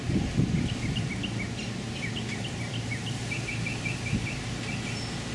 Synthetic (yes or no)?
no